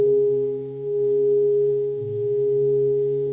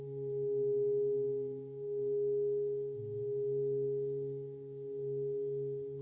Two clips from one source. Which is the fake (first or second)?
first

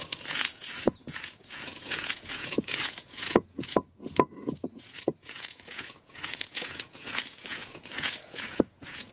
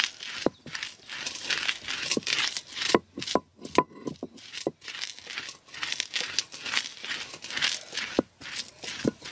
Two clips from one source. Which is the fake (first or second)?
first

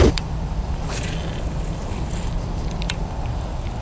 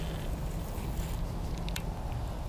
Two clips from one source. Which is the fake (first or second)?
first